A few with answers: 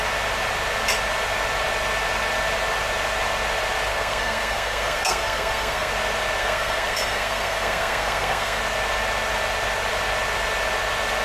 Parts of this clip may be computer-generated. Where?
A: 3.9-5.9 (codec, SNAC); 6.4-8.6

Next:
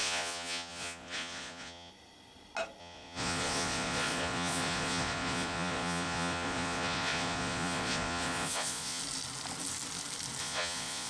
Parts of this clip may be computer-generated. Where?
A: 0.0-1.9 (vocoder, Vocos); 2.8-9.0; 10.4-11.1

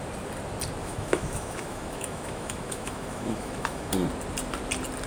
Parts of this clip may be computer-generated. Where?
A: 0.8-3.9 (autoencoder, DAC-VAE)

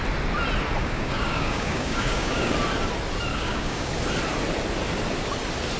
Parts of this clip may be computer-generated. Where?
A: 0.8-2.5 (codec, DAC); 3.3-3.9